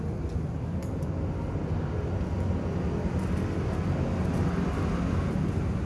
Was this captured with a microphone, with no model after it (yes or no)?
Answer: yes